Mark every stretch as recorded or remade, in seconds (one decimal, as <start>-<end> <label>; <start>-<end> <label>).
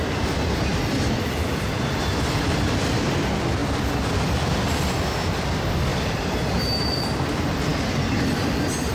0.0-0.7 recorded; 0.7-2.9 remade; 2.9-3.6 recorded; 3.6-5.3 remade; 5.3-5.9 recorded; 5.9-6.9 remade; 6.9-8.9 recorded